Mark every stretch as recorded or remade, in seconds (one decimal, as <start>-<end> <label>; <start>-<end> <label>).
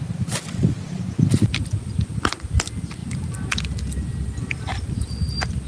0.0-5.7 recorded